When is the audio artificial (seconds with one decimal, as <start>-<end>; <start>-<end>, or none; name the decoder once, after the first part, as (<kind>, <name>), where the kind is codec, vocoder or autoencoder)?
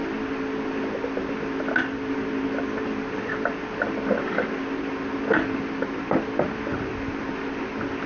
none